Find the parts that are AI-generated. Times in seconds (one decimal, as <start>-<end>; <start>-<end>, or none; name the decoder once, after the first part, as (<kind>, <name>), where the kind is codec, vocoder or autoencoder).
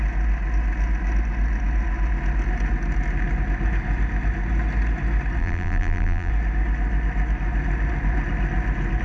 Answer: 5.4-6.3 (vocoder, BigVGAN v2)